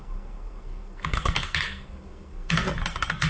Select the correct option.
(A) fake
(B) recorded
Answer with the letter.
A